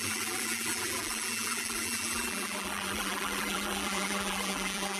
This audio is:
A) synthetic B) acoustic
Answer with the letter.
A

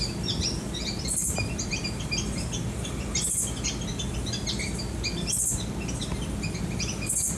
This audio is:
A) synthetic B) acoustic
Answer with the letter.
B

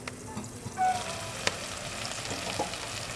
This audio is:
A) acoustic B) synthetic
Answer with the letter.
A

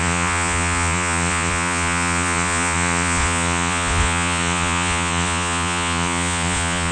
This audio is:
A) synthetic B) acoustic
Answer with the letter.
A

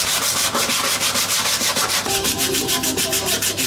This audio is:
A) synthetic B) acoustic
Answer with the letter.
A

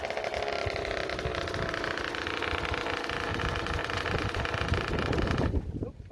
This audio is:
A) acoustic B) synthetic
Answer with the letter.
A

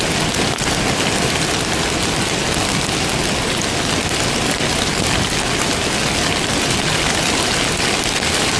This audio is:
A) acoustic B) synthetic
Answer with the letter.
A